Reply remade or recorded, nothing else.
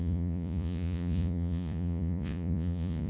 remade